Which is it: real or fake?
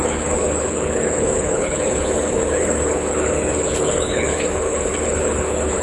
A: fake